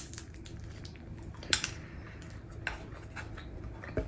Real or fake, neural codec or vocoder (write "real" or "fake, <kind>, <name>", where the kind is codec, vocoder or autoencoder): real